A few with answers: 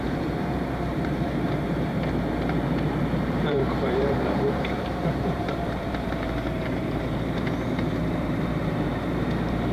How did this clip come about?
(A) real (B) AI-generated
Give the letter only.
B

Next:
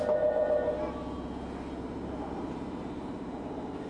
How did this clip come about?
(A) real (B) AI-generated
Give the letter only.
B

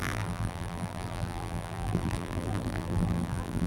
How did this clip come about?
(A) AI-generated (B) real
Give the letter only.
A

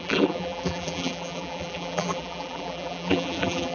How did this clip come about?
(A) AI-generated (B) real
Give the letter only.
A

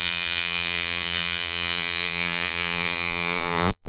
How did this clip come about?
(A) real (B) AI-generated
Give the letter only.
B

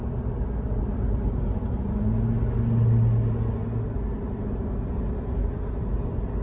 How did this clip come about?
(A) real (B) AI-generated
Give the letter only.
A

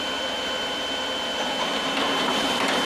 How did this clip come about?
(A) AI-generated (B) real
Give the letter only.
A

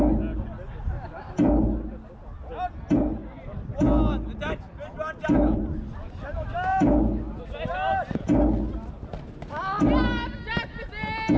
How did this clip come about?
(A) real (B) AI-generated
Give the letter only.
A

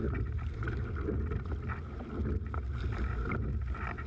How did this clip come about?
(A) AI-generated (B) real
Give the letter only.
B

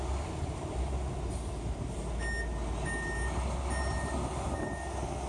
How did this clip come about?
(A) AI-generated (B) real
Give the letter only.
B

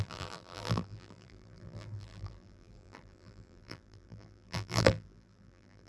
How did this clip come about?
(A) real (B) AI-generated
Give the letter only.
B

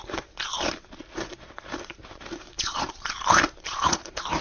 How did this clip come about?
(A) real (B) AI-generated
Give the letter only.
B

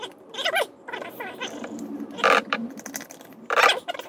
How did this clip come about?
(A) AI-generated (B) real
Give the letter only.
A